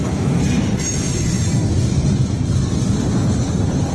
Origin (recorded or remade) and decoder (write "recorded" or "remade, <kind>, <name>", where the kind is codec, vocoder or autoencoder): recorded